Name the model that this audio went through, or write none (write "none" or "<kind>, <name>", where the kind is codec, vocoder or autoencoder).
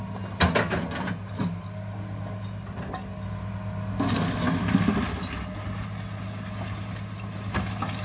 none